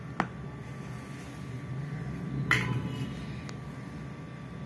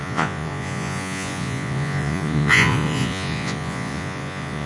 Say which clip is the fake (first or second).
second